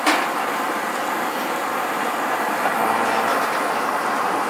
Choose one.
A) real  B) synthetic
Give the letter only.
A